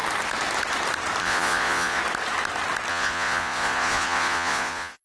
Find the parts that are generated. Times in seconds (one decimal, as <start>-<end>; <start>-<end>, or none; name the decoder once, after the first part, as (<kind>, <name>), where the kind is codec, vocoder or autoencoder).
1.2-2.0 (vocoder, Vocos); 2.9-5.0